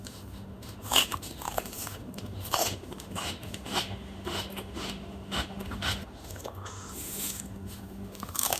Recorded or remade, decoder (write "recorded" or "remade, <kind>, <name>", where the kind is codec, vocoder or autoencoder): remade, autoencoder, DAC-VAE